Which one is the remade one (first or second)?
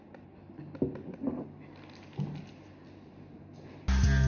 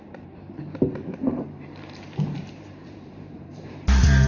second